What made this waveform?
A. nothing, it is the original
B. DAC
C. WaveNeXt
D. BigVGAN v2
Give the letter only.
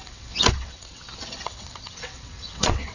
C